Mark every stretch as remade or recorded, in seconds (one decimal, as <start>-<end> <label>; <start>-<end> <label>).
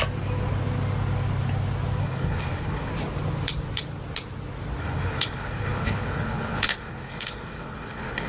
0.0-2.0 recorded; 2.0-2.9 remade; 2.9-4.8 recorded; 4.8-8.3 remade